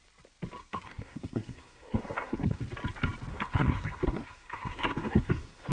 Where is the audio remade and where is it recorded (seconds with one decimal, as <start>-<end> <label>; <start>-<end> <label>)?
0.0-0.6 recorded; 0.6-2.6 remade; 2.6-3.3 recorded; 3.3-5.7 remade